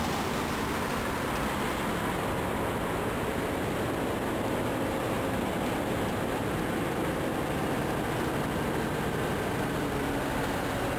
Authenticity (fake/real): real